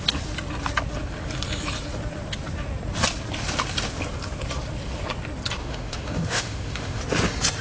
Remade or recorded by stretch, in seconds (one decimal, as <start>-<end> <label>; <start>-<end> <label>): 0.0-5.6 recorded; 5.6-7.0 remade; 7.0-7.6 recorded